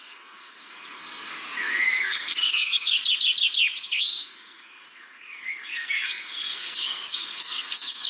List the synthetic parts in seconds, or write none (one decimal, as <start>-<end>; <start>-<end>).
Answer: 0.0-3.0; 3.8-8.1